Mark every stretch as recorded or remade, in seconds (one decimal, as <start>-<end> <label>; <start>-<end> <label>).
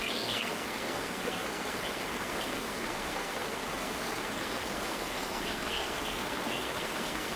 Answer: 0.0-7.4 remade